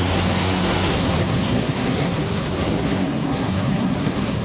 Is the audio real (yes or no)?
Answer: no